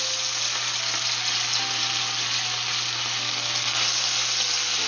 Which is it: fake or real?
real